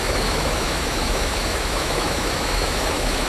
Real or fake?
fake